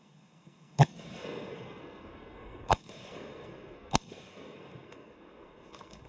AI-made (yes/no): yes